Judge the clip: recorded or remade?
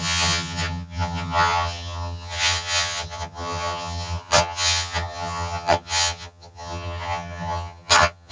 remade